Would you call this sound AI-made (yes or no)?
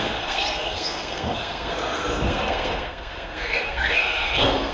yes